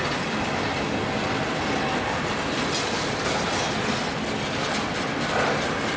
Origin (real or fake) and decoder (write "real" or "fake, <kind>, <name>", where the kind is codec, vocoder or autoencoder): real